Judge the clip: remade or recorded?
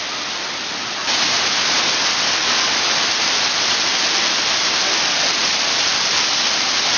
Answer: recorded